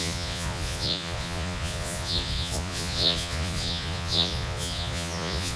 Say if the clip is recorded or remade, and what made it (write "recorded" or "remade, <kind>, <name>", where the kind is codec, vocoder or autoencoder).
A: remade, vocoder, Vocos